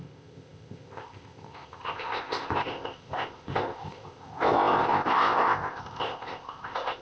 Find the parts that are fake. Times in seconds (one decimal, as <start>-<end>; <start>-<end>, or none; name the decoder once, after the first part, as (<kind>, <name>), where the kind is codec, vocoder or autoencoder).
0.0-7.0 (codec, ZipCodec)